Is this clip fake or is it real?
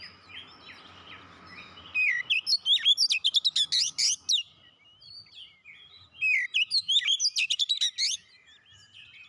real